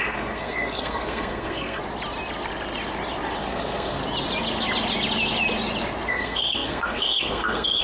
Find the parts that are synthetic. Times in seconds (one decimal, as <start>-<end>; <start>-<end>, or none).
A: 0.0-1.8; 3.4-4.0; 6.1-7.8